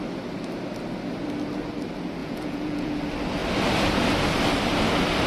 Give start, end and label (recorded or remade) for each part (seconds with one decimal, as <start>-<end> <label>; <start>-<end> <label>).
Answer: 0.0-2.2 recorded; 2.2-2.9 remade; 2.9-5.3 recorded